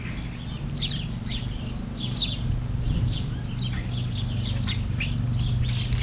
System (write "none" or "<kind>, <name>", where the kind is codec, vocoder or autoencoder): none